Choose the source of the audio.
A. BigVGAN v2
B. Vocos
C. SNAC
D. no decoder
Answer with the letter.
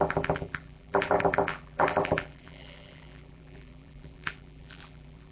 A